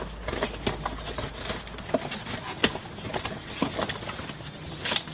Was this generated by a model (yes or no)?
no